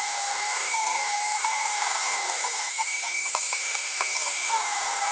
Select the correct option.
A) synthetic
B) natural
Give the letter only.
A